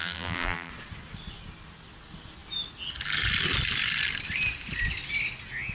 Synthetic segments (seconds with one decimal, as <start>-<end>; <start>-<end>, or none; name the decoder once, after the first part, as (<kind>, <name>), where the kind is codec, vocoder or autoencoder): 0.0-0.7 (vocoder, BigVGAN v2)